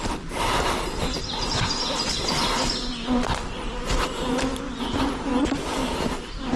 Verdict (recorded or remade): recorded